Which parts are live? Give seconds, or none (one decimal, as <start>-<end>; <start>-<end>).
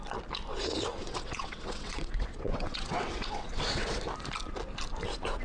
0.0-0.9; 4.0-5.4